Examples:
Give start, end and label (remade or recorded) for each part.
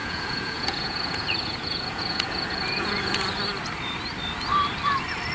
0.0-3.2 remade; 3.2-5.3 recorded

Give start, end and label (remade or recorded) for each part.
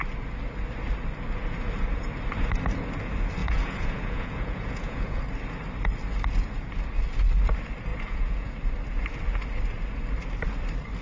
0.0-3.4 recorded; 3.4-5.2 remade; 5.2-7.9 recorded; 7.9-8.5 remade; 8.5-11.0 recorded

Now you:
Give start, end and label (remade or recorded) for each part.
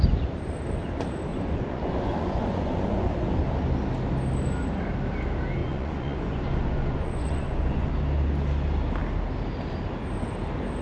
0.0-1.3 recorded; 1.3-3.1 remade; 3.1-5.6 recorded; 5.6-7.9 remade; 7.9-10.8 recorded